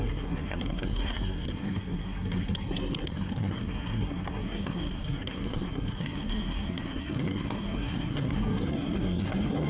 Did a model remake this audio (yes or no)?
yes